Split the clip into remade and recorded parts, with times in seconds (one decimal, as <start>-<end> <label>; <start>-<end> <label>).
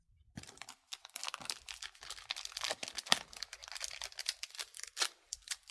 0.0-1.2 remade; 1.2-3.2 recorded; 3.2-3.6 remade; 3.6-4.2 recorded; 4.2-5.7 remade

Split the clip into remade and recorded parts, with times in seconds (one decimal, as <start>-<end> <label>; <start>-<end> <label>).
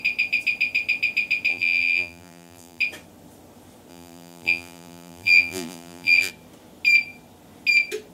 0.0-1.5 recorded; 1.5-2.8 remade; 2.8-3.9 recorded; 3.9-6.3 remade; 6.3-8.1 recorded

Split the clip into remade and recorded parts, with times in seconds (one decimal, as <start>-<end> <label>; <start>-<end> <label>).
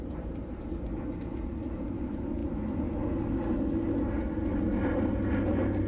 0.0-5.9 recorded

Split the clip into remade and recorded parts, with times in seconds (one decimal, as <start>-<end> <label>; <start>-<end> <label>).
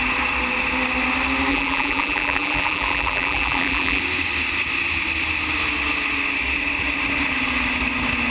0.0-1.5 recorded; 1.5-4.0 remade; 4.0-8.3 recorded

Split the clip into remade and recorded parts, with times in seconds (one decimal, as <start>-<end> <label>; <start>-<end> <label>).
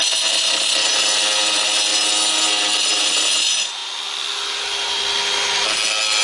0.0-6.2 recorded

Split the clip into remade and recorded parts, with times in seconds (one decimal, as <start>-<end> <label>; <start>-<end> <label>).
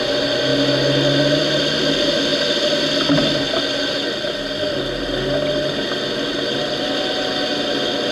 0.0-8.1 recorded